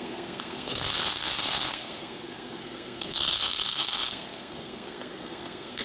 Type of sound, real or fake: fake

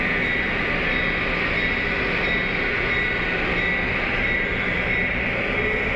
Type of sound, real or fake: real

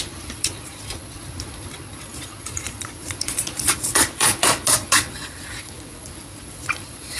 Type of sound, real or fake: fake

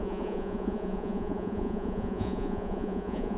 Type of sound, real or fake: fake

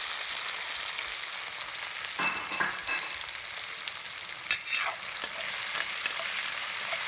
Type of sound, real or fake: real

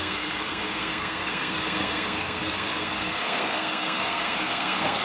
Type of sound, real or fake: fake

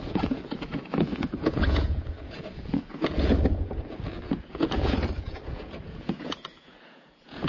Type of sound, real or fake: fake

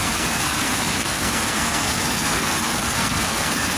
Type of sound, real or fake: fake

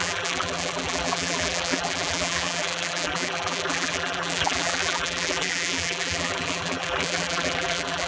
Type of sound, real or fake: fake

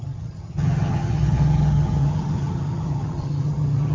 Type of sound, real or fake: fake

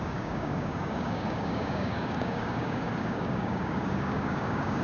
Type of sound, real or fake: fake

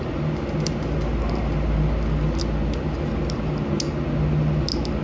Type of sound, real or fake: real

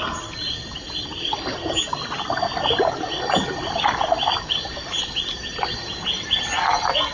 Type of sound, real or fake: real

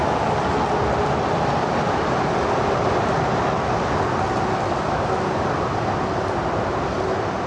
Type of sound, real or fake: real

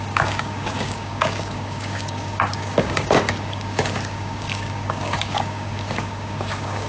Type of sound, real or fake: fake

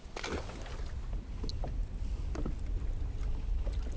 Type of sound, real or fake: real